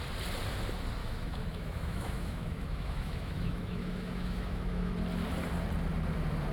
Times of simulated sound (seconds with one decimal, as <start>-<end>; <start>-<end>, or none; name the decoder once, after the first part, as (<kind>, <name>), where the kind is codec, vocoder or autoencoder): 1.0-4.9 (autoencoder, DAC-VAE)